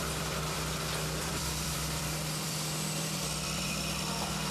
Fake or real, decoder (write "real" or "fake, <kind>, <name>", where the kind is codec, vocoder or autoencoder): fake, vocoder, BigVGAN v2